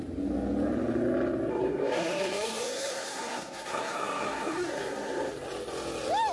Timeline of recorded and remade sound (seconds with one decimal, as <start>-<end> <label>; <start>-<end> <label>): 0.0-1.5 recorded; 1.5-5.3 remade; 5.3-6.3 recorded